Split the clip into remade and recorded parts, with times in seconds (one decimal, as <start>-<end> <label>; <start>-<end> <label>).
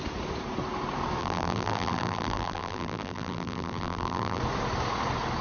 0.0-1.2 recorded; 1.2-4.4 remade; 4.4-5.4 recorded